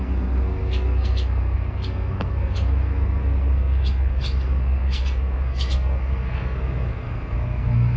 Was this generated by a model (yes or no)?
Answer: yes